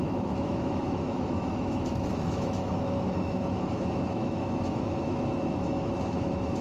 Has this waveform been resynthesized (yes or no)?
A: yes